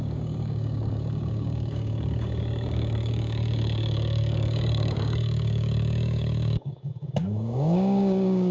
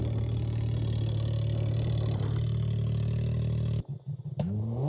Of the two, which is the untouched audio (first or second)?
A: second